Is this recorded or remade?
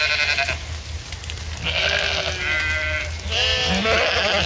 recorded